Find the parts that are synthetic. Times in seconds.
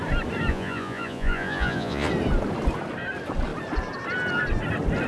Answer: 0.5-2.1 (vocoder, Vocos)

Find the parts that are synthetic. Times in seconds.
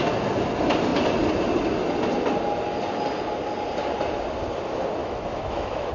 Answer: 5.0-5.9 (autoencoder, DAC-VAE)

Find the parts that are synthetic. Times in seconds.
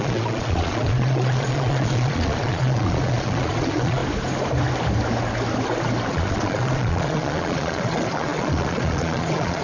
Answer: 0.0-4.0 (vocoder, Vocos); 6.1-9.6